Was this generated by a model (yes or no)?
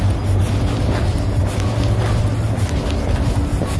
no